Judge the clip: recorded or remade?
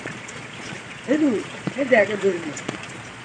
remade